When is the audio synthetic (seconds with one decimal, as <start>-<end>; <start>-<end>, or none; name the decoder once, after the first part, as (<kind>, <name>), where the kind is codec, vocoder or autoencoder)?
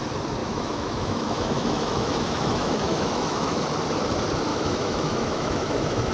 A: 0.4-3.6 (autoencoder, DAC-VAE); 4.5-6.1